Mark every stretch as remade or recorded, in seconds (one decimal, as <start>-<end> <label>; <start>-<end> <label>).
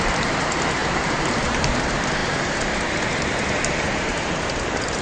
0.0-5.0 remade